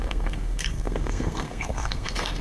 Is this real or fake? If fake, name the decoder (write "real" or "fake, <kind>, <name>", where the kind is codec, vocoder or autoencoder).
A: fake, codec, SNAC